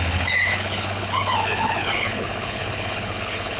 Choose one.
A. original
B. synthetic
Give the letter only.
B